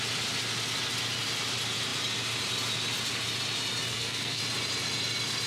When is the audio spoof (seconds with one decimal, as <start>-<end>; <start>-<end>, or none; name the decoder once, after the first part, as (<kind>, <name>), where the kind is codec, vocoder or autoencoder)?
3.9-4.4 (codec, SNAC)